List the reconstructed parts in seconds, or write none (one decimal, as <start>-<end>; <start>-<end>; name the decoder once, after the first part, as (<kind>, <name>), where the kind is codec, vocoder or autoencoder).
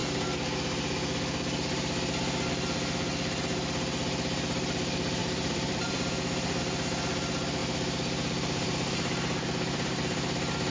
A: 5.2-6.6 (vocoder, BigVGAN v2); 7.6-10.7